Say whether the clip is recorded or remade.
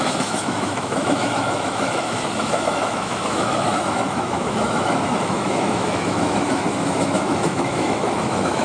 remade